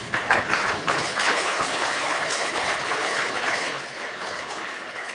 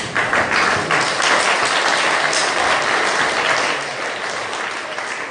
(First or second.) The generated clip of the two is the first